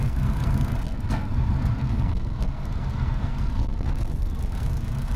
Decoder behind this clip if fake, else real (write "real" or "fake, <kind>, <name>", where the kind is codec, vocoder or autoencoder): fake, codec, SNAC